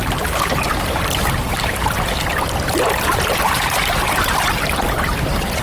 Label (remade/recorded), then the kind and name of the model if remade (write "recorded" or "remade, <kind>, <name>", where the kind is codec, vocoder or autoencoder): remade, vocoder, BigVGAN v2